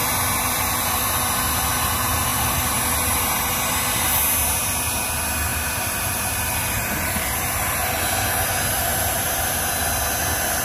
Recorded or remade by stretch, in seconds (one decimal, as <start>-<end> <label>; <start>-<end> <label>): 0.0-2.3 recorded; 2.3-3.7 remade; 3.7-5.5 recorded; 5.5-7.2 remade; 7.2-8.8 recorded; 8.8-9.8 remade; 9.8-10.6 recorded